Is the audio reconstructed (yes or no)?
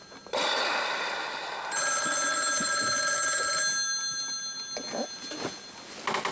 no